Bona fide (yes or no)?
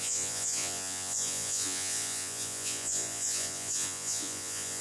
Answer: no